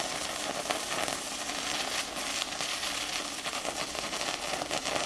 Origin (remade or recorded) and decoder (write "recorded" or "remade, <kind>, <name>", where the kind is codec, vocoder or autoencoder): recorded